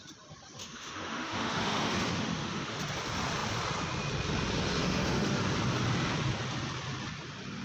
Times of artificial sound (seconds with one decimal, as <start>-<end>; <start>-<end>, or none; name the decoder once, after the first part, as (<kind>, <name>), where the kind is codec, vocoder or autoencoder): 0.6-2.8 (autoencoder, DAC-VAE); 4.8-5.4